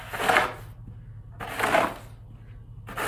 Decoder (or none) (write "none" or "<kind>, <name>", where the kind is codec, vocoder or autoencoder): none